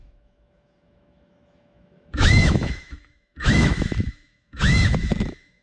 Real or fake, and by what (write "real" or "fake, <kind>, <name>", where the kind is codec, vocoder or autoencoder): fake, autoencoder, DAC-VAE